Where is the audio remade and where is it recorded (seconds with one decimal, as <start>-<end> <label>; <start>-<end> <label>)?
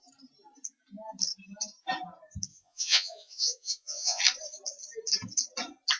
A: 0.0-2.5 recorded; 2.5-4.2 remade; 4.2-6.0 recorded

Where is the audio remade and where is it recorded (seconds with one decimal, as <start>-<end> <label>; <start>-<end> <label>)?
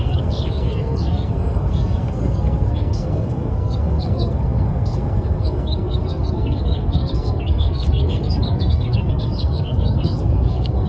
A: 0.0-10.9 remade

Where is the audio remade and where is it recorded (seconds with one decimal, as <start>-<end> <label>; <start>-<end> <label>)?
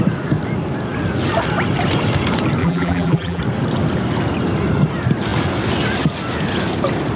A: 0.0-2.6 recorded; 2.6-3.4 remade; 3.4-7.2 recorded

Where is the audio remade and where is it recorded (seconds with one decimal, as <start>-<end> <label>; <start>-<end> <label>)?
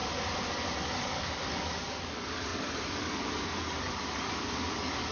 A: 0.0-0.8 recorded; 0.8-5.1 remade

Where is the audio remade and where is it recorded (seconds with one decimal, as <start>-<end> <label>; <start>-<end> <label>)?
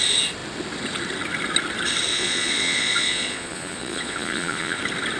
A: 0.0-2.1 recorded; 2.1-4.8 remade; 4.8-5.2 recorded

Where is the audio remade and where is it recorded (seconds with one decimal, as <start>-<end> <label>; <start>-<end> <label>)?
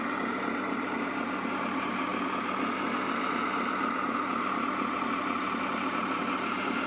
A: 0.0-6.9 recorded